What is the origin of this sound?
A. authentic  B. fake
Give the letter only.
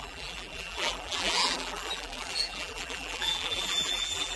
B